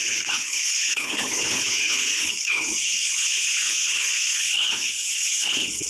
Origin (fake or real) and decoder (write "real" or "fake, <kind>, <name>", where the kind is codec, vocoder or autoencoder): fake, codec, HILCodec